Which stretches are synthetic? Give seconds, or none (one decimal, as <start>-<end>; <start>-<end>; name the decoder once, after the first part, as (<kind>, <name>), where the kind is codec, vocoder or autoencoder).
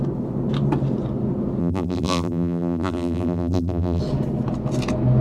1.6-4.0 (vocoder, BigVGAN v2)